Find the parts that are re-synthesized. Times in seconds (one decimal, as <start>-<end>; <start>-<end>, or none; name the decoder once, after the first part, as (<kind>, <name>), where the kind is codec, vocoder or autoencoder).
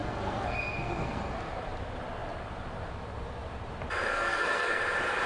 0.0-1.3 (codec, SNAC); 4.1-4.8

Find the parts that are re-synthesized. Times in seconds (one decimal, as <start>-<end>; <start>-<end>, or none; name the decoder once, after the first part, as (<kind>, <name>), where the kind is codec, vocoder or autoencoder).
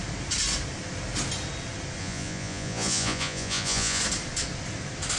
2.0-4.0 (vocoder, Vocos)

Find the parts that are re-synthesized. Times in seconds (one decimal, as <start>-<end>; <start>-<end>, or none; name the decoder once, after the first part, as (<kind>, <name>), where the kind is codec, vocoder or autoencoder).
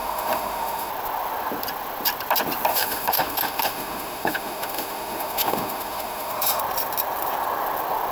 0.0-0.9 (autoencoder, DAC-VAE); 2.7-6.6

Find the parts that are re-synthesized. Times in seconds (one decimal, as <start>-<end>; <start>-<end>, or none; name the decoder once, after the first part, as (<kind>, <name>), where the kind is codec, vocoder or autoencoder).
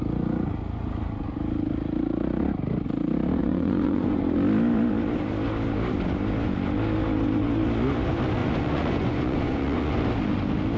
3.4-4.2 (vocoder, Vocos); 8.4-10.0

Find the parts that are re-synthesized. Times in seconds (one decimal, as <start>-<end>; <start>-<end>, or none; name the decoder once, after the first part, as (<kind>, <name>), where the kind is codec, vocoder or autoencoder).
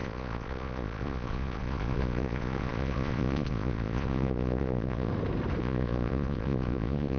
0.0-5.1 (vocoder, Vocos); 5.6-7.2